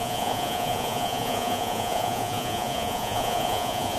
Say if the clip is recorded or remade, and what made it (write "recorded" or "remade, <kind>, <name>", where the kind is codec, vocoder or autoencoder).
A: remade, vocoder, Vocos